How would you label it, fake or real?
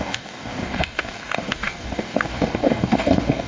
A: fake